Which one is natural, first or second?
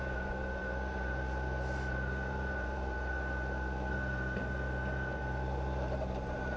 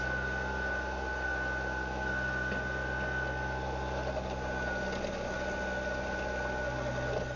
second